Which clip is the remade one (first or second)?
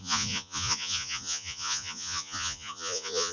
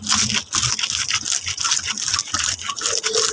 first